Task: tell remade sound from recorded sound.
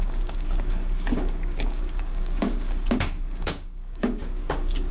remade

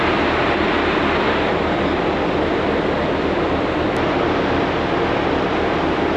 recorded